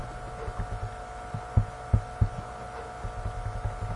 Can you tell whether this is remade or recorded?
recorded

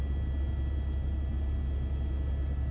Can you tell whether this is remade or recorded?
recorded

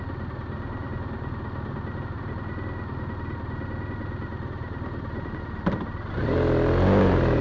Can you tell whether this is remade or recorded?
recorded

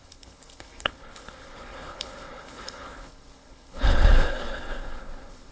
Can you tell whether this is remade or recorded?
remade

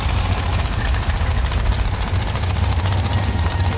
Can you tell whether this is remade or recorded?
recorded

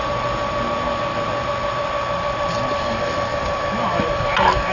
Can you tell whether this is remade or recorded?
recorded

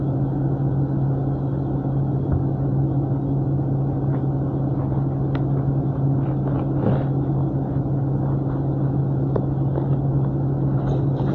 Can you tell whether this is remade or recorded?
recorded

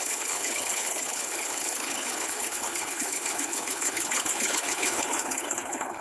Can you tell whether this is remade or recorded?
remade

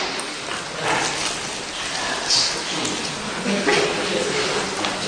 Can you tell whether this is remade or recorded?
recorded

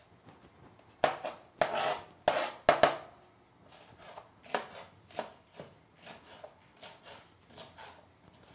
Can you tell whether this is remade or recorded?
recorded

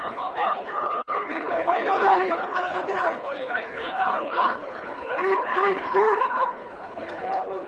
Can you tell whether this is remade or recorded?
remade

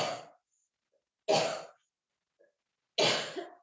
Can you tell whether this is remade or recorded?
recorded